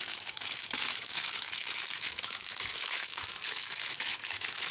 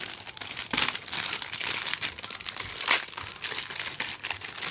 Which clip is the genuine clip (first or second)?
second